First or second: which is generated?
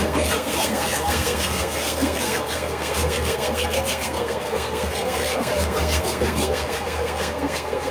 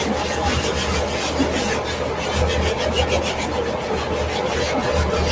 first